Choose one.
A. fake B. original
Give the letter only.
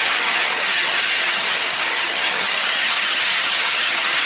A